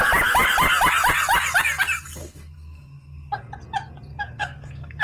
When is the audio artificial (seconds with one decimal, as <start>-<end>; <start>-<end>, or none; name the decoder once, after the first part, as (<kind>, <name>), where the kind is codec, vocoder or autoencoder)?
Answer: 2.2-3.5 (codec, SNAC); 4.1-5.0